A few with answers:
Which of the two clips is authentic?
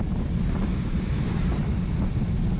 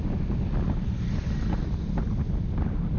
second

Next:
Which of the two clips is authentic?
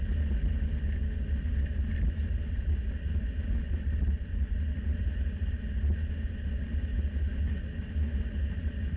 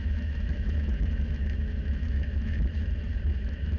first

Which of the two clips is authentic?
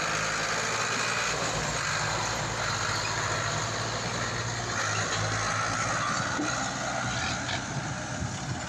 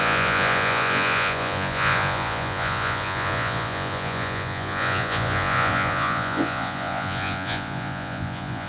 first